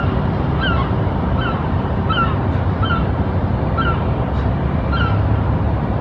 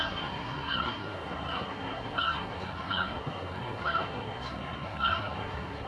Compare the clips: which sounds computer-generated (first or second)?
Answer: second